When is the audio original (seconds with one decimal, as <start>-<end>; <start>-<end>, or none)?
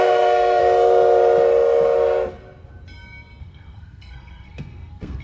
0.6-3.4